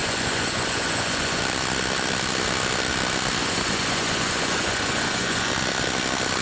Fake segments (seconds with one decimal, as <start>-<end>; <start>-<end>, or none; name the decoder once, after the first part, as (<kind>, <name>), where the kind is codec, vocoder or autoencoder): 0.0-1.4 (vocoder, Vocos); 3.4-5.5

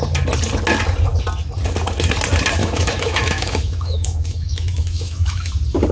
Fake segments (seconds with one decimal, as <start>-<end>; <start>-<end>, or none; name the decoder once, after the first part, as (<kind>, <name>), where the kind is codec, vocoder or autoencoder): 2.6-5.5 (autoencoder, DAC-VAE)

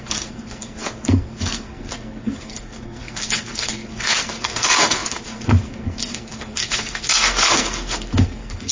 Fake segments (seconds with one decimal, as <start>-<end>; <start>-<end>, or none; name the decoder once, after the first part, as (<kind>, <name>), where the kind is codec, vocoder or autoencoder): 0.0-8.7 (codec, SNAC)

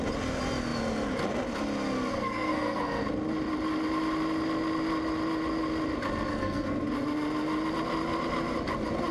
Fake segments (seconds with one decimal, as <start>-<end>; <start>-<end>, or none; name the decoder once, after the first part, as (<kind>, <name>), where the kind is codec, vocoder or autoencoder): 2.1-3.0 (codec, SNAC); 6.3-6.8

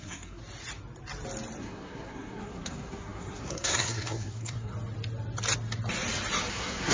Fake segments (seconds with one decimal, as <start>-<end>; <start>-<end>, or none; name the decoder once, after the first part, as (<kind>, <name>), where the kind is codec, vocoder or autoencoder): 0.0-0.4 (codec, SNAC); 1.6-4.7; 6.5-6.9